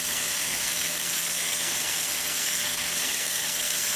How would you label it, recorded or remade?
remade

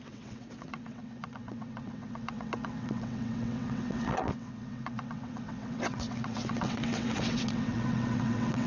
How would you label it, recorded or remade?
remade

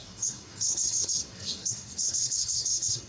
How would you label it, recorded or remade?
remade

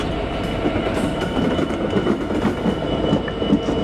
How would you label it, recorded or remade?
recorded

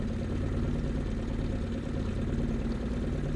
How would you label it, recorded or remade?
recorded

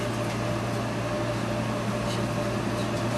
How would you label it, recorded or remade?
recorded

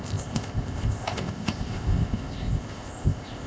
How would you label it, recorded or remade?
remade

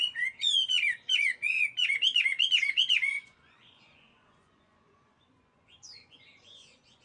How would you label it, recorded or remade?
remade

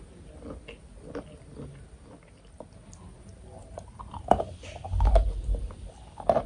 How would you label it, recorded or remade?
recorded